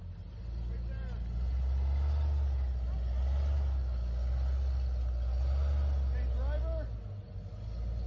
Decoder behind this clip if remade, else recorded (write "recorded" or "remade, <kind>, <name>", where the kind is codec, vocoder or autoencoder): recorded